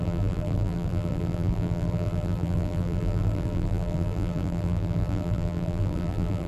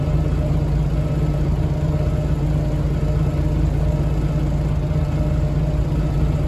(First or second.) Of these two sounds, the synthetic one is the first